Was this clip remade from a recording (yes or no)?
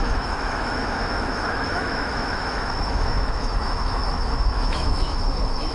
yes